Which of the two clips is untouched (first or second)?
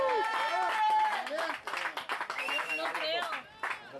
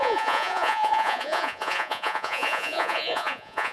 first